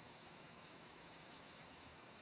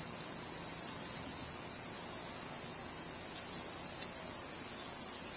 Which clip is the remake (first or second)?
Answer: first